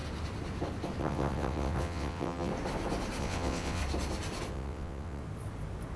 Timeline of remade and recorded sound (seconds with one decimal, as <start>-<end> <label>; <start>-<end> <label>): 0.0-1.0 recorded; 1.0-2.5 remade; 2.5-3.2 recorded; 3.2-3.8 remade; 3.8-4.5 recorded; 4.5-5.2 remade; 5.2-6.0 recorded